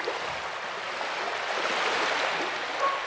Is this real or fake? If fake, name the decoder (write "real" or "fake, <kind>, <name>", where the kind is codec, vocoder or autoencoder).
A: real